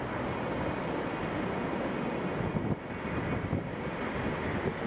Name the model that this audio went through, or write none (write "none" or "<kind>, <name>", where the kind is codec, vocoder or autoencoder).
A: none